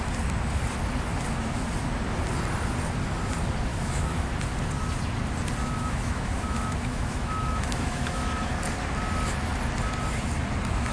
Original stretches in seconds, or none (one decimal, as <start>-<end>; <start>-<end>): 0.0-3.7; 4.3-5.6; 8.5-10.9